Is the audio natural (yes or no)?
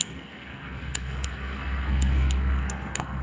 no